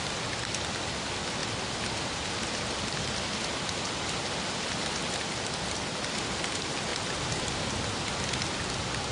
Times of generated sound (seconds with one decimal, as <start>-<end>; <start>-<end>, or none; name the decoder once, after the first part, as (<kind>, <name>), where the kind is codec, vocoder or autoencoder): none